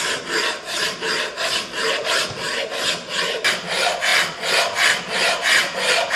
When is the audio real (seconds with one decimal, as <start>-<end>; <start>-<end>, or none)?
none